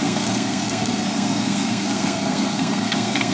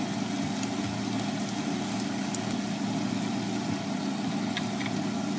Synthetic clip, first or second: first